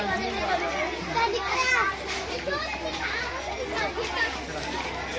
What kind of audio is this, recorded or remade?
recorded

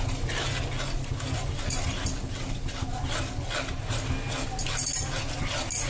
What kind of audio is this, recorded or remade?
recorded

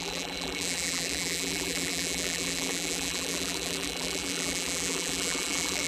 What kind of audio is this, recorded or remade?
remade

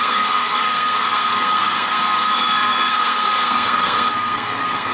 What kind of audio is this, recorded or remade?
remade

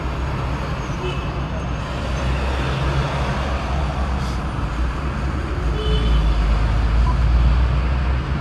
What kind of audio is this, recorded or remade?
recorded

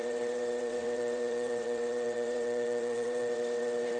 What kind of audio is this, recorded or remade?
remade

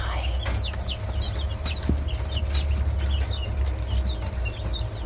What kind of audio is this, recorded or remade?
recorded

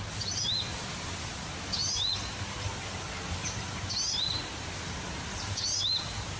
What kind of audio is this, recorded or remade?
recorded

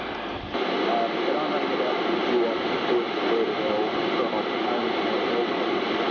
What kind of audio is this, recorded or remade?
recorded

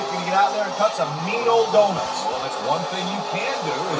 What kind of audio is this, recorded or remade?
recorded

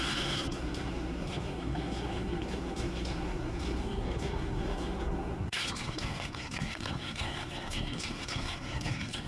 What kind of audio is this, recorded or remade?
remade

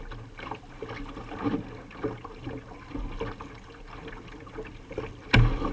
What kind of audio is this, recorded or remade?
recorded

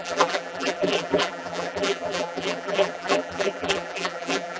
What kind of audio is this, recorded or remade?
remade